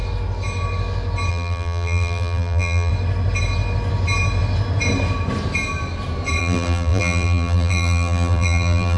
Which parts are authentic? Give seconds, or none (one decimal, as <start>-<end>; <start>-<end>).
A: 0.0-1.3; 2.9-6.4